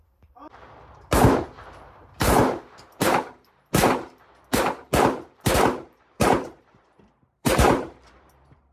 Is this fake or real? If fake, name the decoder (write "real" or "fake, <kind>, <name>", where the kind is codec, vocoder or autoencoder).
fake, vocoder, BigVGAN v2